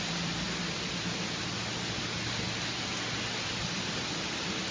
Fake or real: real